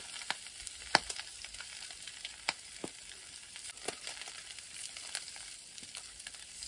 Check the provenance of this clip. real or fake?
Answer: fake